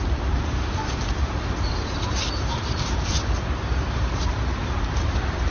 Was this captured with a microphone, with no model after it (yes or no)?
no